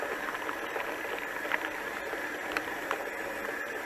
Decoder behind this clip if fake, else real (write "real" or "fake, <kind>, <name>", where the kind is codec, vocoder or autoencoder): real